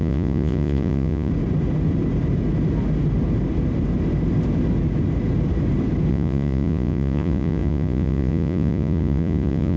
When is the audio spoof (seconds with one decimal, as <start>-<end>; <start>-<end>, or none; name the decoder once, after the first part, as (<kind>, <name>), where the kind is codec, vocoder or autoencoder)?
0.0-1.3 (vocoder, Vocos); 6.1-9.8